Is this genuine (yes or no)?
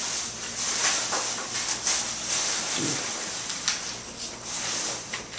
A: yes